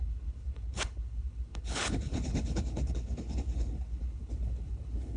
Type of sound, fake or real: fake